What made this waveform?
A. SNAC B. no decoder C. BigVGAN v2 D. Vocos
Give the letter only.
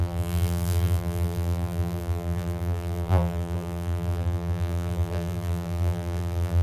C